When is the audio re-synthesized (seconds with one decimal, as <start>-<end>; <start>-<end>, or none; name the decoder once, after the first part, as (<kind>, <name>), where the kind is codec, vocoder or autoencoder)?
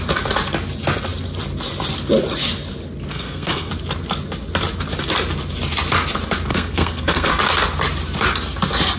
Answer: 3.1-3.7 (codec, SNAC); 6.5-7.3